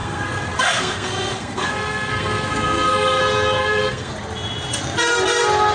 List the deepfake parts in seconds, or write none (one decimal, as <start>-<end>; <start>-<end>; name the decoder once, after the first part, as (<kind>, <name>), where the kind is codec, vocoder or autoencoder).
0.0-3.2 (codec, SNAC); 3.6-4.1